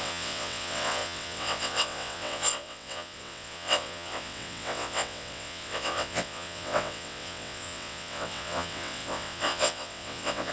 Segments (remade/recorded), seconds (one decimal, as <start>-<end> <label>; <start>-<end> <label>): 0.0-10.5 remade